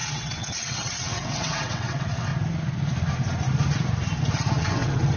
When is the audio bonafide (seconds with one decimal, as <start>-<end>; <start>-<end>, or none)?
2.3-4.7